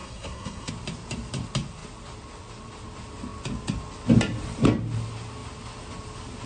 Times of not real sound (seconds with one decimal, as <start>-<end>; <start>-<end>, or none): 0.0-0.7